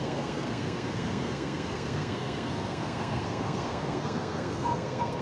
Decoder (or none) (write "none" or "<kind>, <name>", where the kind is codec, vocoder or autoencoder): codec, SNAC